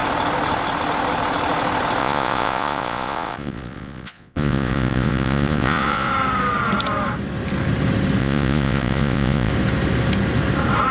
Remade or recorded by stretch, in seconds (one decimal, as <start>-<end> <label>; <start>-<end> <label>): 0.0-2.0 recorded; 2.0-6.1 remade; 6.1-8.2 recorded; 8.2-9.5 remade; 9.5-10.9 recorded